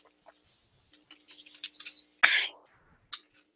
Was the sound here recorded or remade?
recorded